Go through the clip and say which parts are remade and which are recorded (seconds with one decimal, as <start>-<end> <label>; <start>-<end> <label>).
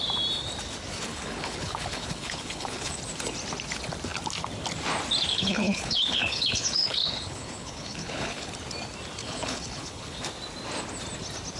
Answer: 0.0-1.1 recorded; 1.1-3.0 remade; 3.0-5.3 recorded; 5.3-8.5 remade; 8.5-9.2 recorded; 9.2-10.2 remade; 10.2-11.6 recorded